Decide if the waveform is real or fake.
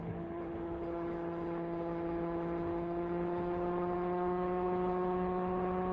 fake